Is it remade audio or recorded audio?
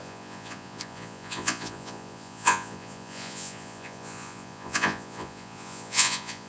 remade